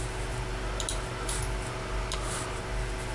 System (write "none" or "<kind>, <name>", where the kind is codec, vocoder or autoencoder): none